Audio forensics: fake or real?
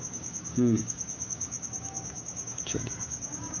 fake